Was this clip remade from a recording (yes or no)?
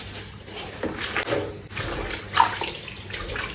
no